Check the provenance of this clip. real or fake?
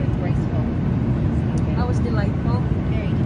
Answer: real